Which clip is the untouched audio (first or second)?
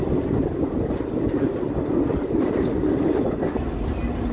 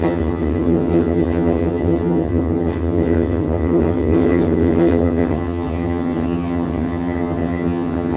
first